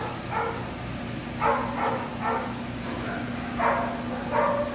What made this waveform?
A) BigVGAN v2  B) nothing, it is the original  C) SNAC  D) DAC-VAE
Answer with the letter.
B